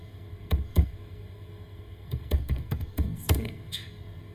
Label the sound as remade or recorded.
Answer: remade